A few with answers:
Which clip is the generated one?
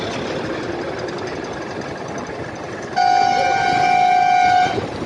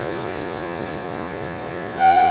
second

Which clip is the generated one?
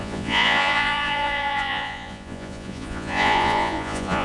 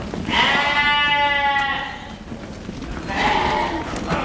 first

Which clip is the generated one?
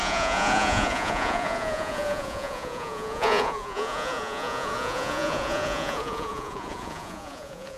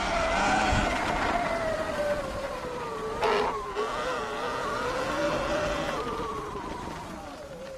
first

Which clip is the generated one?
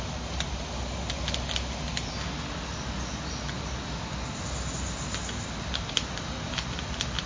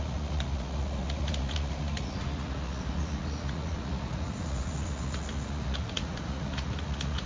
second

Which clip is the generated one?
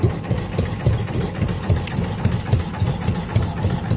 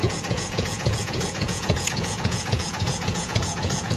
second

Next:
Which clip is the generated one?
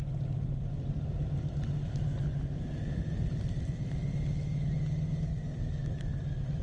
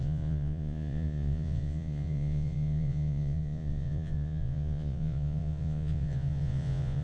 second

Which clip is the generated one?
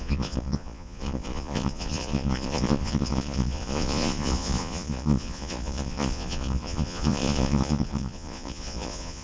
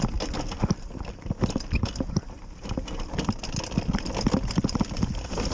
first